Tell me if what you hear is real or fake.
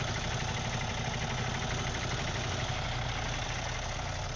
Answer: real